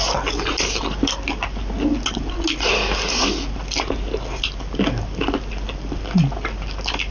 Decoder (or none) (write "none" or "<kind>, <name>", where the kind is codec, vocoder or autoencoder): none